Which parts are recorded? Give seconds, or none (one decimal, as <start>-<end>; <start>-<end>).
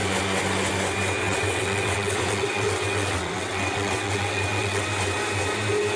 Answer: 0.0-1.2; 4.8-6.0